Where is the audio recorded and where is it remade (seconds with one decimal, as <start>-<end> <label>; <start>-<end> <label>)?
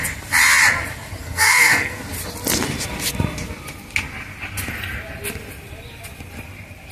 0.0-1.2 recorded; 1.2-2.0 remade; 2.0-6.9 recorded